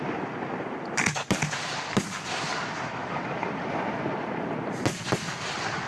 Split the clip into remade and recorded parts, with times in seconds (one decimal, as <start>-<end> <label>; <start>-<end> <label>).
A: 0.0-5.9 recorded